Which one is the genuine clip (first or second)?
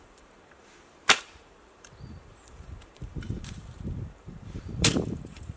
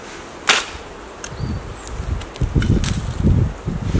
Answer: second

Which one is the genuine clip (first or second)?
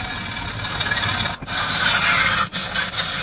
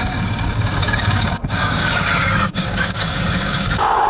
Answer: first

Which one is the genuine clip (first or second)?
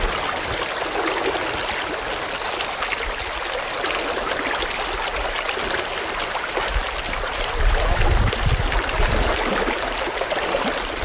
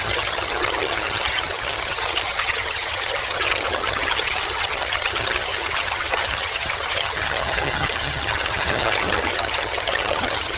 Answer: first